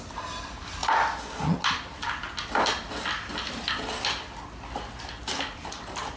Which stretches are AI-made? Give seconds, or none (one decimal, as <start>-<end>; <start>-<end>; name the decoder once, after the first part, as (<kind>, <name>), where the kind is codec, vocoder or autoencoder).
none